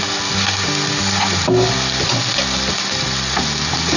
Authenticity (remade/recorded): recorded